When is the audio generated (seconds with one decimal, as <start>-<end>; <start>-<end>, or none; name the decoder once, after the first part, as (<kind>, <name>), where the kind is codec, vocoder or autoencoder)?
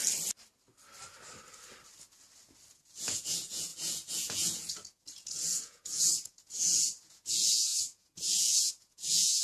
2.7-9.4 (vocoder, Vocos)